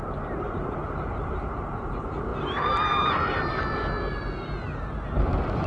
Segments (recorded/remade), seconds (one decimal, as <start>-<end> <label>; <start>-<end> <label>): 0.0-3.5 remade; 3.5-4.1 recorded; 4.1-5.7 remade